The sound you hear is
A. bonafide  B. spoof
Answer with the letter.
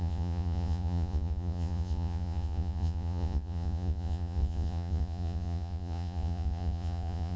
B